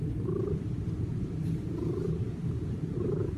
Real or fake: fake